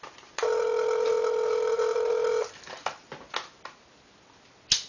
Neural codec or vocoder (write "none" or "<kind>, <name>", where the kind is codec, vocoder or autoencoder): none